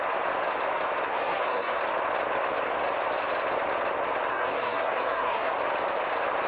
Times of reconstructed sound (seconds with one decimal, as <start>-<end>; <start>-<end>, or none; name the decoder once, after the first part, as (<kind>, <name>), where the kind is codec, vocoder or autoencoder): 1.1-1.8 (codec, SNAC); 4.3-5.5